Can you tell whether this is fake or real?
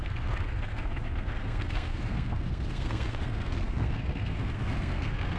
fake